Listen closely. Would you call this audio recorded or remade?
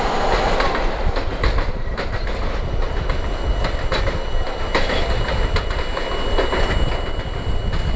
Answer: recorded